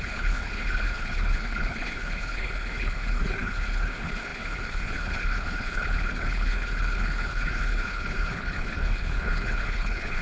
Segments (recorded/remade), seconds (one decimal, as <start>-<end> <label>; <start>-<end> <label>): 0.0-10.2 remade

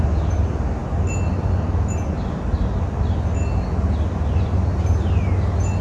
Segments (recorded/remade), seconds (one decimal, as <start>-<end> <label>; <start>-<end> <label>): 0.0-5.8 recorded

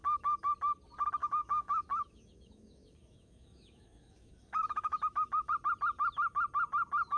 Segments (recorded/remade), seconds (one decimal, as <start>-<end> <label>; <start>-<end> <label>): 0.0-0.5 remade; 0.5-1.2 recorded; 1.2-5.5 remade; 5.5-7.2 recorded

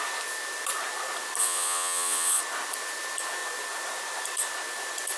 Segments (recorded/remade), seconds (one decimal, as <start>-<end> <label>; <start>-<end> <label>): 0.0-1.4 recorded; 1.4-2.4 remade; 2.4-5.2 recorded

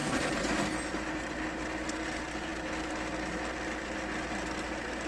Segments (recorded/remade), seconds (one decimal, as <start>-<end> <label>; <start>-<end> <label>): 0.0-5.1 recorded

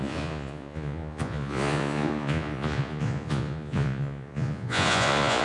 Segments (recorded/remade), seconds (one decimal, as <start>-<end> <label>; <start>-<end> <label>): 0.0-5.4 remade